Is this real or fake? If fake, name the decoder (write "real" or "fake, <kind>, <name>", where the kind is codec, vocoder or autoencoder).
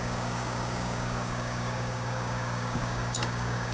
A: fake, codec, DAC